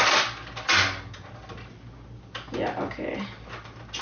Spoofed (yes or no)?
no